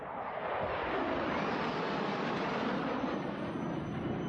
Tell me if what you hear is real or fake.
real